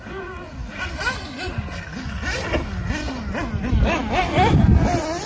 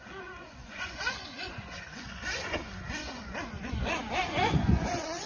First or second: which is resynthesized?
second